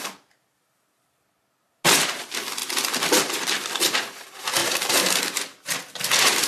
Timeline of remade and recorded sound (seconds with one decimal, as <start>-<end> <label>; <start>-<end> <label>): 0.0-2.6 recorded; 2.6-3.8 remade; 3.8-6.5 recorded